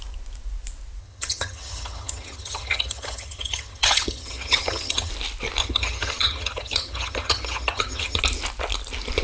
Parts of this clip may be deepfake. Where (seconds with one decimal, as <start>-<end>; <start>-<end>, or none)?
1.0-5.1; 5.6-8.2